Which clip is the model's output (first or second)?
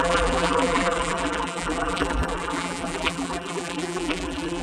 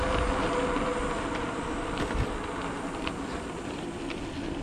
first